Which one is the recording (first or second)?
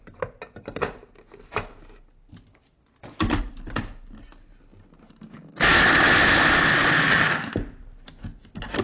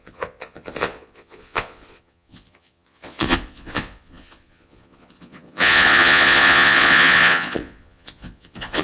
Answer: first